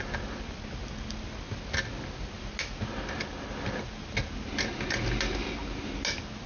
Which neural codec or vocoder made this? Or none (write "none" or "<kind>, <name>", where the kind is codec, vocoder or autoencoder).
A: none